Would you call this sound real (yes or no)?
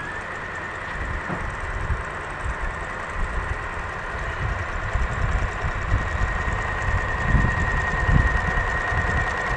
yes